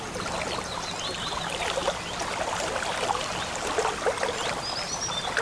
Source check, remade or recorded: recorded